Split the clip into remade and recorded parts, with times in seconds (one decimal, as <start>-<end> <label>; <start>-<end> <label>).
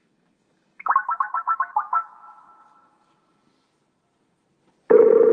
0.0-3.5 remade; 3.5-5.3 recorded